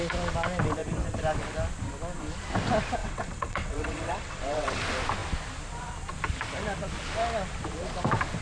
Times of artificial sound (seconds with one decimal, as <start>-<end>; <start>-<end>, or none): 3.0-4.8